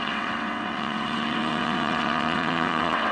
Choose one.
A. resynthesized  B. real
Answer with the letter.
A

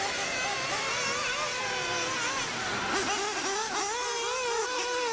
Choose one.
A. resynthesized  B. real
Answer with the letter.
B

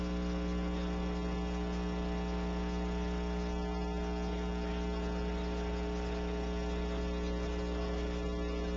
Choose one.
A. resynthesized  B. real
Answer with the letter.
B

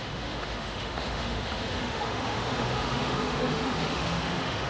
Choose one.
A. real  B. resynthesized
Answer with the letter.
B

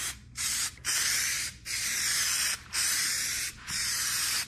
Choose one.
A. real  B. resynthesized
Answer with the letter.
B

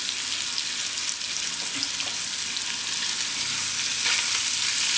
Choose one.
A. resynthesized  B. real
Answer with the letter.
B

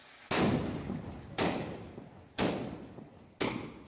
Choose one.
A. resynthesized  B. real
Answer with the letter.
B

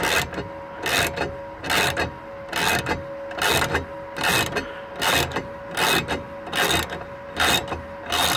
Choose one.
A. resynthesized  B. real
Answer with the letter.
B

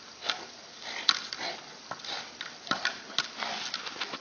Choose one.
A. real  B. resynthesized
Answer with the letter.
A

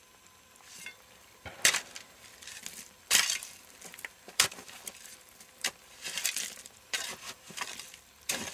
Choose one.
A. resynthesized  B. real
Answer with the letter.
A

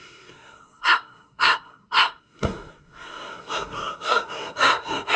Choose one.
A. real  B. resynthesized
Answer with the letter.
B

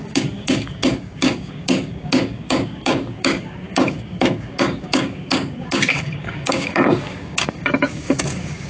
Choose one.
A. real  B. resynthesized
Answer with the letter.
B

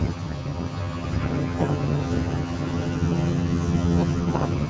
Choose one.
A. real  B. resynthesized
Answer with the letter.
B